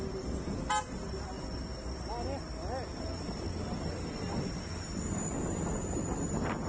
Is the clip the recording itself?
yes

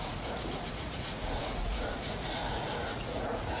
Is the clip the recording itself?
no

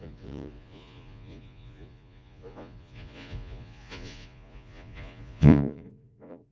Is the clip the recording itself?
no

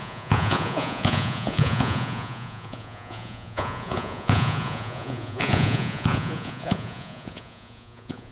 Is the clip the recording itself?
no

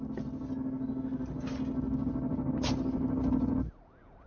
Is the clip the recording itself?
yes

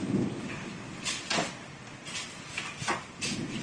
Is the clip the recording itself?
yes